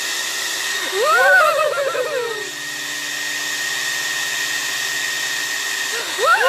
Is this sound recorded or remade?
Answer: remade